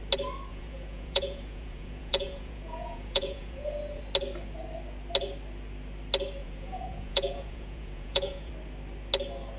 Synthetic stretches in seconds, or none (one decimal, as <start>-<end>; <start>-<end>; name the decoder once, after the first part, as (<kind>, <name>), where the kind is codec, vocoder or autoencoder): 0.5-4.0 (vocoder, Vocos); 6.4-8.5